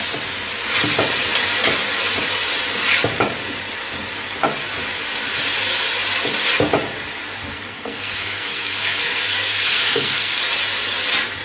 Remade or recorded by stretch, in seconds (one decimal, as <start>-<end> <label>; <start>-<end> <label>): 0.0-7.5 recorded; 7.5-10.4 remade; 10.4-11.4 recorded

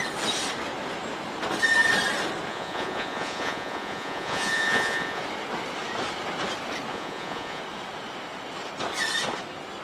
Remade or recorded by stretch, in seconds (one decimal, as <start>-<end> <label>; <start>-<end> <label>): 0.0-2.5 recorded; 2.5-5.2 remade; 5.2-6.9 recorded; 6.9-7.6 remade; 7.6-9.8 recorded

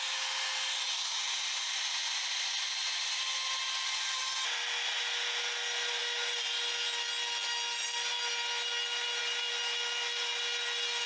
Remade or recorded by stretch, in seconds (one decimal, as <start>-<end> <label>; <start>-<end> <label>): 0.0-11.1 recorded

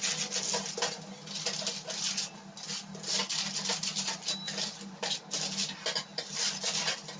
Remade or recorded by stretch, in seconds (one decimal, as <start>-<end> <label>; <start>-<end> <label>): 0.0-7.2 recorded

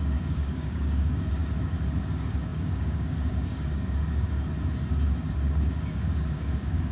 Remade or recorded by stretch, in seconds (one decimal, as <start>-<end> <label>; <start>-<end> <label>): 0.0-1.4 remade; 1.4-2.0 recorded; 2.0-4.5 remade; 4.5-5.5 recorded; 5.5-6.9 remade

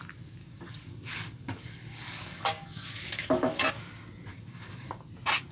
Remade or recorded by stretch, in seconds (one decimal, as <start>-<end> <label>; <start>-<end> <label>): 0.0-0.4 recorded; 0.4-3.7 remade; 3.7-4.3 recorded; 4.3-4.9 remade; 4.9-5.5 recorded

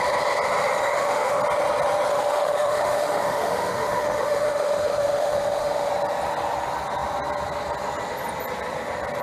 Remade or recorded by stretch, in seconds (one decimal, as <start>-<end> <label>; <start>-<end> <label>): 0.0-0.8 recorded; 0.8-1.4 remade; 1.4-2.1 recorded; 2.1-5.9 remade; 5.9-9.2 recorded

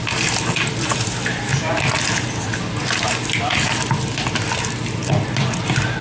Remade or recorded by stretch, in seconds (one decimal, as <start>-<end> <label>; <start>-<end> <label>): 0.0-6.0 recorded